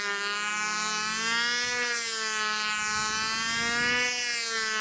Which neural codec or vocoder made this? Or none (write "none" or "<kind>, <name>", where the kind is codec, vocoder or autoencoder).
none